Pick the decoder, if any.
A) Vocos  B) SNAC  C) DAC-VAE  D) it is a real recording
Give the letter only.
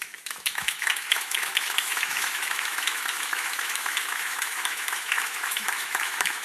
C